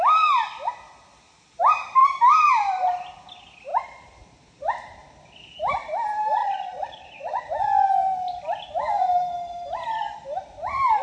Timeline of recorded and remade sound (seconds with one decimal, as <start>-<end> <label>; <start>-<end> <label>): 0.0-6.4 recorded; 6.4-7.5 remade; 7.5-11.0 recorded